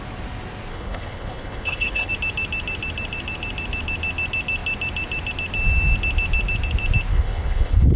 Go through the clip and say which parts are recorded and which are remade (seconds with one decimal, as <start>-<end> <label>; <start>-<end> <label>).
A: 0.0-0.7 recorded; 0.7-2.1 remade; 2.1-7.1 recorded; 7.1-8.0 remade